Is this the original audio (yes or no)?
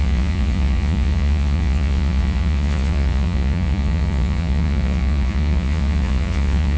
no